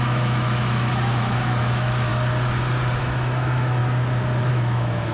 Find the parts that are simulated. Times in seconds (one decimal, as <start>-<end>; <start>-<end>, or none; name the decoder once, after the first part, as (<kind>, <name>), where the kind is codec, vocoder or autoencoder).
0.0-2.1 (autoencoder, DAC-VAE); 3.0-3.8; 4.5-5.1